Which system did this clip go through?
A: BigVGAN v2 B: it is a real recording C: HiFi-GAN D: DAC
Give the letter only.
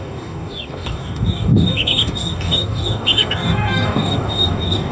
D